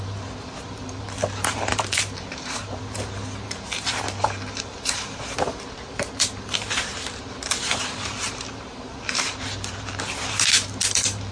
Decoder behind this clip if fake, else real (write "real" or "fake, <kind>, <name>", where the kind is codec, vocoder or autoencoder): fake, vocoder, BigVGAN v2